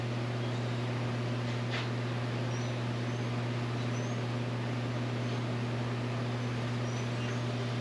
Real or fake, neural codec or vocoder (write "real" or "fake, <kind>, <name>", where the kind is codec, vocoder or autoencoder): real